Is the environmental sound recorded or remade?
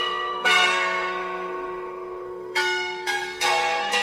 remade